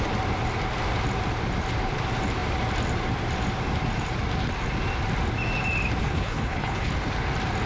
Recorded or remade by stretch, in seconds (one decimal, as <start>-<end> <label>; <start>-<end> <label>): 0.0-6.0 recorded; 6.0-6.9 remade; 6.9-7.7 recorded